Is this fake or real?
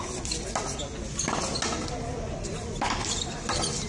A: real